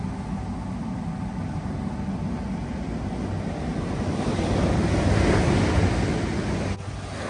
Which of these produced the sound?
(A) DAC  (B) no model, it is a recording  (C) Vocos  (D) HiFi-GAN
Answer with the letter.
B